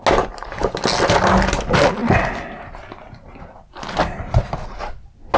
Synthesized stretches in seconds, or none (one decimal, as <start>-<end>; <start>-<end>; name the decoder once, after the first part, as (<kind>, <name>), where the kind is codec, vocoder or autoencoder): none